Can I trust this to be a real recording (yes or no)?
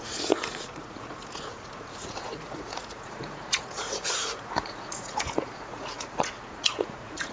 no